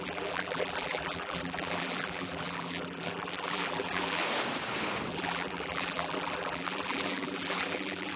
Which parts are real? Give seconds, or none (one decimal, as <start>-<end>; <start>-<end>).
4.2-5.1